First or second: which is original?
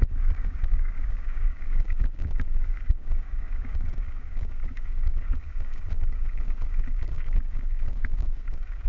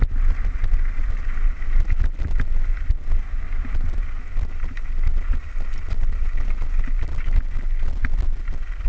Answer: second